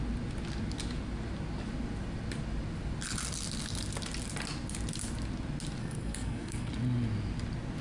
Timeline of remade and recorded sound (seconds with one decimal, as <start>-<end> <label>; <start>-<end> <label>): 0.0-5.8 recorded; 5.8-6.7 remade; 6.7-7.8 recorded